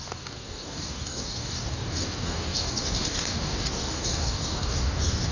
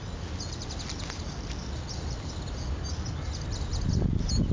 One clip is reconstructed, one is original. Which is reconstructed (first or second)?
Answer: first